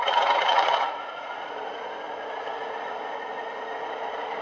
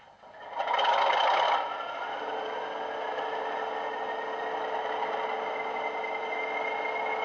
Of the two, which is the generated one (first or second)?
first